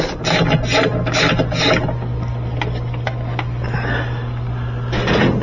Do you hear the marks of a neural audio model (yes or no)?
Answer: no